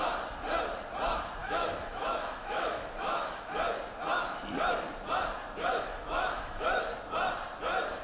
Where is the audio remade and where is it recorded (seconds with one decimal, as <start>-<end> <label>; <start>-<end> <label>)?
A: 0.0-1.4 recorded; 1.4-3.6 remade; 3.6-5.7 recorded; 5.7-6.9 remade; 6.9-8.0 recorded